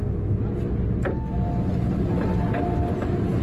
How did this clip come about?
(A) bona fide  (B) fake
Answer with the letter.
A